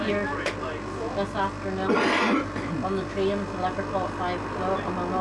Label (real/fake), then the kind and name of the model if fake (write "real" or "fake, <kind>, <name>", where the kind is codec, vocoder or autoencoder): real